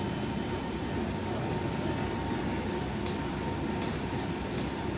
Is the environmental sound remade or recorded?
recorded